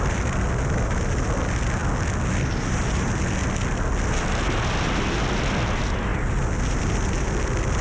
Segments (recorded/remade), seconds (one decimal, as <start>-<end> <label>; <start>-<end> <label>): 0.0-7.8 recorded